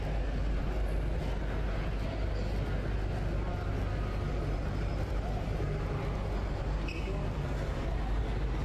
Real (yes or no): yes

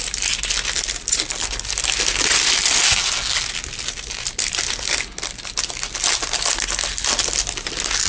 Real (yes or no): yes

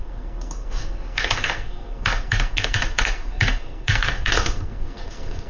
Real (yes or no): no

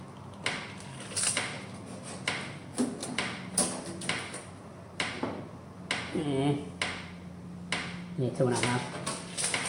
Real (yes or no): yes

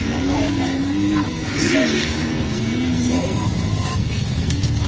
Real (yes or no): no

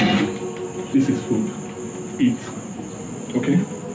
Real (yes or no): yes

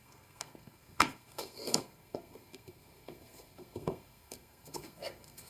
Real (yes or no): no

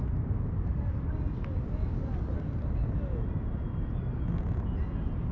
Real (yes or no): yes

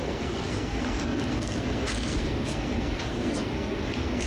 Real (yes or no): no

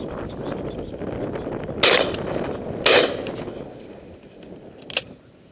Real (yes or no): yes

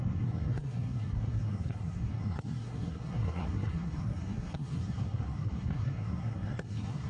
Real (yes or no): no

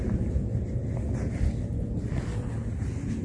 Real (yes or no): yes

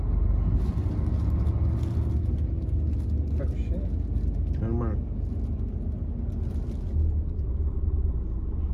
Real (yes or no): yes